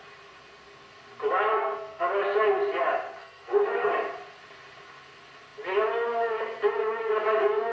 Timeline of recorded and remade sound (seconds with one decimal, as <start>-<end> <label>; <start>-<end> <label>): 0.0-1.5 recorded; 1.5-2.0 remade; 2.0-3.2 recorded; 3.2-3.9 remade; 3.9-7.7 recorded